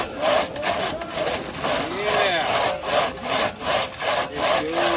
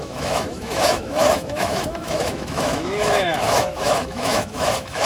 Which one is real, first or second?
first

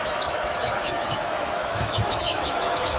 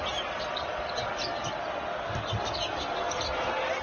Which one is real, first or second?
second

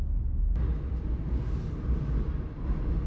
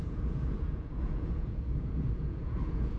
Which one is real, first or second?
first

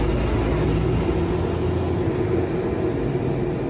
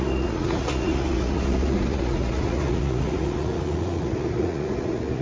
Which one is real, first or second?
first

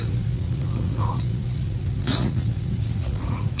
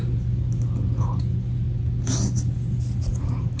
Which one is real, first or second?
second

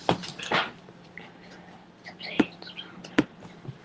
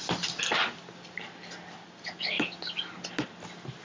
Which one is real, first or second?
second